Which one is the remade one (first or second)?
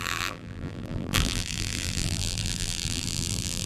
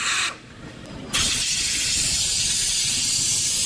first